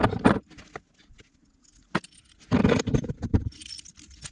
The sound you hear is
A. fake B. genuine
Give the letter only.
B